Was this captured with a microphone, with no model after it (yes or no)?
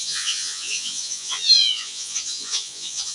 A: no